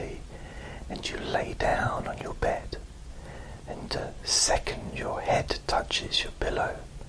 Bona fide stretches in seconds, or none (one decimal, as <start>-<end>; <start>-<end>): 0.0-1.7; 2.5-4.2; 5.5-7.1